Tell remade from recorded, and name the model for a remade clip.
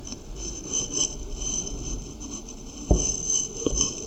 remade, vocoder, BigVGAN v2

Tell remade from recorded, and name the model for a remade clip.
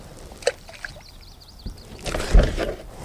recorded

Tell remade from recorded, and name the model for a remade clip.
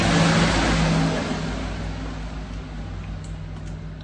recorded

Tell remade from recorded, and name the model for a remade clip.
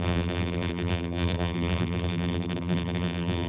remade, vocoder, BigVGAN v2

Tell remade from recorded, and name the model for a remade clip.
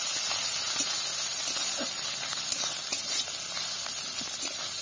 recorded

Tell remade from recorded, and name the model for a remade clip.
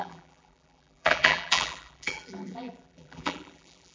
remade, vocoder, BigVGAN v2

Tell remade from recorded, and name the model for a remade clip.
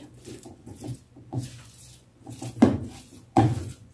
remade, vocoder, Vocos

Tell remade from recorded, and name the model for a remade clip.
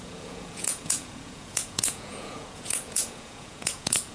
remade, vocoder, Vocos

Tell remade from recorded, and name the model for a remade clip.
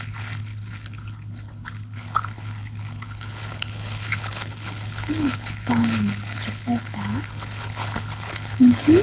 remade, codec, HILCodec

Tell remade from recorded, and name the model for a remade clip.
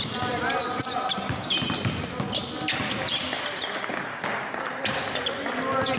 recorded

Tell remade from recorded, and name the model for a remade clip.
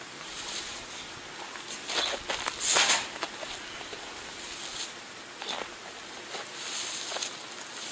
recorded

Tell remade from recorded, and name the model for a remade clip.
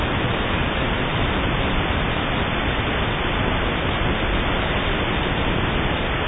recorded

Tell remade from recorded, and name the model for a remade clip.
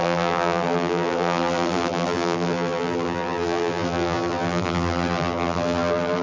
remade, vocoder, BigVGAN v2